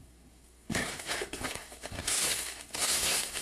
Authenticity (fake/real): fake